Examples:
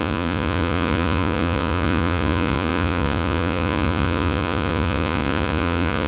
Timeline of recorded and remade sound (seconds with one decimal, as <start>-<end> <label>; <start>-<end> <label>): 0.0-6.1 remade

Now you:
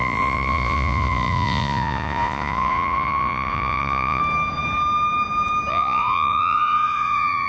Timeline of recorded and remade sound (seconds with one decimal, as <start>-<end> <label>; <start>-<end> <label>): 0.0-4.2 remade; 4.2-5.7 recorded; 5.7-7.5 remade

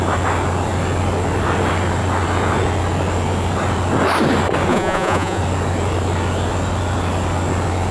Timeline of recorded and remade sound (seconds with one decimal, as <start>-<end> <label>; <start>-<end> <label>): 0.0-4.7 recorded; 4.7-5.4 remade; 5.4-7.9 recorded